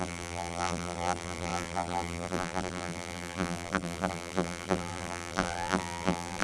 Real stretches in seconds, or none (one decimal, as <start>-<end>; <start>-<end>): none